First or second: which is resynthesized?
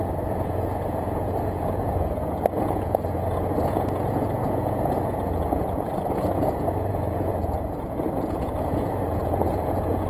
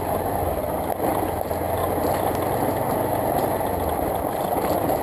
first